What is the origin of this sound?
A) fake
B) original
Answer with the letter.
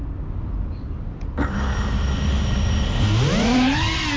B